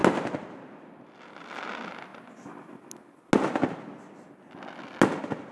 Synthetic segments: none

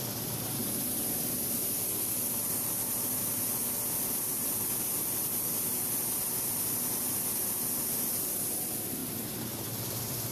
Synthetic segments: none

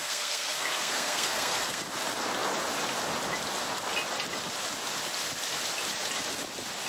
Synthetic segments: 0.0-1.8 (codec, SNAC)

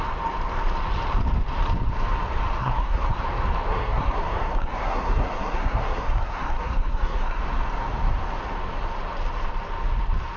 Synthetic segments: 2.6-3.2 (codec, SNAC); 3.7-7.4